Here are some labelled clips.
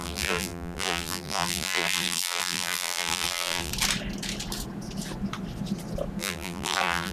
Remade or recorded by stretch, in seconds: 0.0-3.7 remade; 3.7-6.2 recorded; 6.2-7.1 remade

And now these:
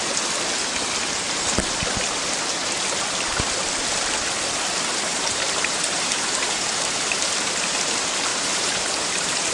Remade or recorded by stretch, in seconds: 0.0-5.1 recorded; 5.1-7.5 remade; 7.5-8.3 recorded; 8.3-9.5 remade

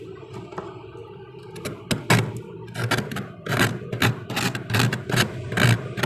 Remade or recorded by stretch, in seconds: 0.0-6.1 recorded

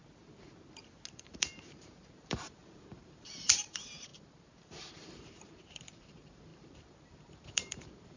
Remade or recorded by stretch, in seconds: 0.0-1.1 recorded; 1.1-8.2 remade

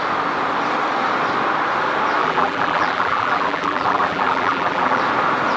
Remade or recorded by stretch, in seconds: 0.0-2.2 recorded; 2.2-5.0 remade; 5.0-5.6 recorded

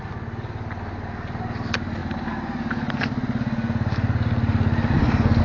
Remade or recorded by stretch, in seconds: 0.0-5.4 recorded